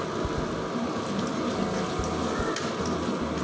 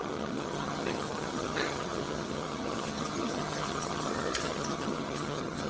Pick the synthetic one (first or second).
second